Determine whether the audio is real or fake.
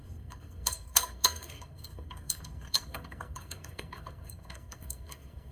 fake